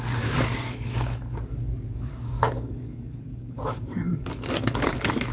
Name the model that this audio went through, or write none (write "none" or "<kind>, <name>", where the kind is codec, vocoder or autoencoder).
codec, DAC